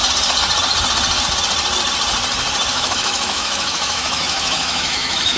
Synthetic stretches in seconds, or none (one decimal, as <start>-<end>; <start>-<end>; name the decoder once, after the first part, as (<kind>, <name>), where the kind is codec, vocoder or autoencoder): 2.7-5.4 (autoencoder, DAC-VAE)